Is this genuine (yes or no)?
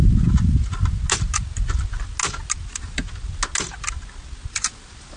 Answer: yes